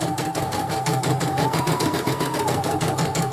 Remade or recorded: remade